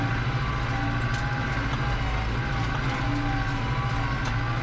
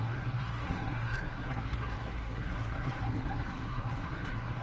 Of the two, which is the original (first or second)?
first